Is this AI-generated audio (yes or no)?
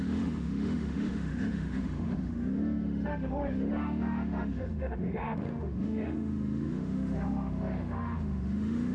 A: yes